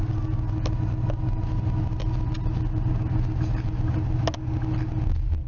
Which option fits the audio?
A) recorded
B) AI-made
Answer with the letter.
A